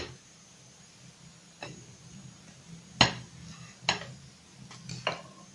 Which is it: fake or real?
real